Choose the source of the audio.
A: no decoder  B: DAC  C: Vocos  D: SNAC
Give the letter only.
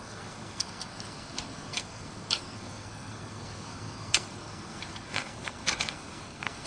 D